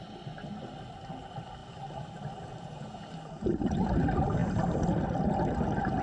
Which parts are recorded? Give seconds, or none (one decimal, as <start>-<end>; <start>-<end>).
0.0-1.6; 4.0-6.0